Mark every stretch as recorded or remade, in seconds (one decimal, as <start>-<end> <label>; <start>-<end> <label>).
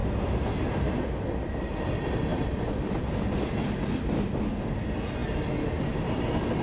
0.0-2.3 recorded; 2.3-4.1 remade; 4.1-6.6 recorded